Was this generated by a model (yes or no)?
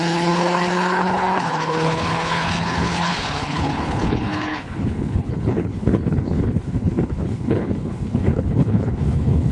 yes